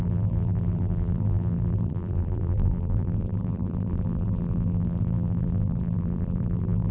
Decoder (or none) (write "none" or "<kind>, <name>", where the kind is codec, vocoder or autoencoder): vocoder, BigVGAN v2